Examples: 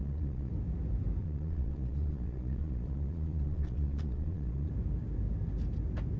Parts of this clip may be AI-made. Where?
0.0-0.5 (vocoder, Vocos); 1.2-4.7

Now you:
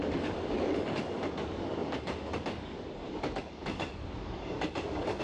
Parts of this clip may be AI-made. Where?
0.0-5.2 (codec, DAC)

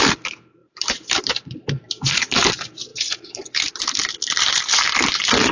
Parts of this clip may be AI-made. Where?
0.6-2.5 (vocoder, BigVGAN v2); 2.9-3.6

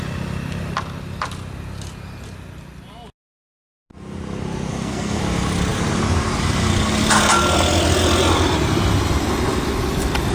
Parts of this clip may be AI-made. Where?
4.7-5.2 (codec, SNAC)

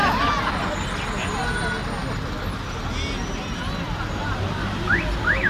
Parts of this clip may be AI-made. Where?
none

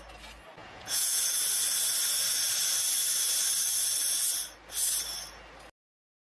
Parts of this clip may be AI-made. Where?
0.6-1.2 (vocoder, Vocos)